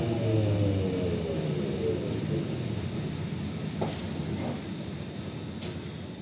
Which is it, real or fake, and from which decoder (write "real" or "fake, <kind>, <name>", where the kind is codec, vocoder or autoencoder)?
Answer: real